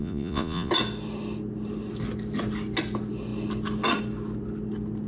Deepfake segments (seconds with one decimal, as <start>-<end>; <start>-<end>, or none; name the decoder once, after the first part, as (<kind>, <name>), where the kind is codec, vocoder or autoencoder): 0.0-0.7 (vocoder, Vocos)